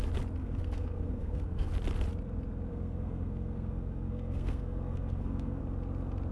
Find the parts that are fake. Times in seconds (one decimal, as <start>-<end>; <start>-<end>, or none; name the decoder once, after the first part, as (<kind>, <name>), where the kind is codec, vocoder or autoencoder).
0.4-1.7 (codec, SNAC); 2.7-5.6